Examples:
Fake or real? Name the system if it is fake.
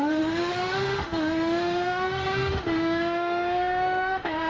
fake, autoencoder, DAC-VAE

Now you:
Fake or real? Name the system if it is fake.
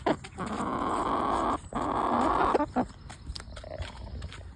real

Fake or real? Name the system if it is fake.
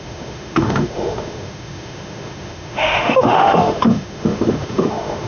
fake, autoencoder, DAC-VAE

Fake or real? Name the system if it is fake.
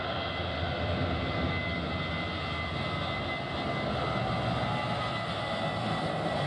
real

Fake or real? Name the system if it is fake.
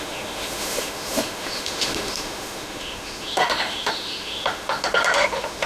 fake, autoencoder, DAC-VAE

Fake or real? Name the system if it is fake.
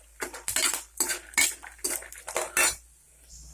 real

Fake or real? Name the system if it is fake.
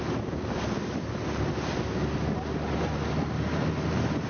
real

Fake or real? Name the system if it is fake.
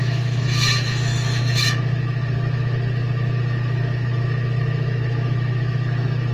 fake, autoencoder, DAC-VAE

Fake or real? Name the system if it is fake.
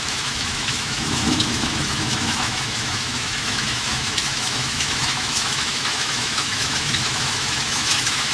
fake, autoencoder, DAC-VAE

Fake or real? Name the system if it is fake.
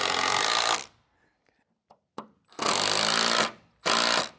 real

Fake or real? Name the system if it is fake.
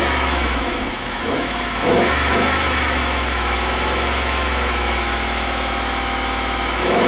fake, autoencoder, DAC-VAE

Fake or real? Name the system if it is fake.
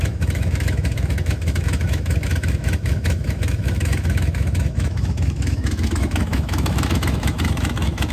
fake, autoencoder, DAC-VAE